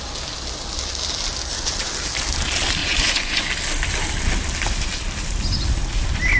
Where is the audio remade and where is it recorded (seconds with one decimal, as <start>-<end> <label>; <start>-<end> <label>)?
0.0-2.8 recorded; 2.8-3.4 remade; 3.4-6.4 recorded